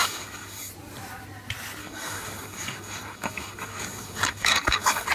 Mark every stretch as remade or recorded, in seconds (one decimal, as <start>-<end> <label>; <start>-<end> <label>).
0.0-0.7 remade; 0.7-1.8 recorded; 1.8-5.1 remade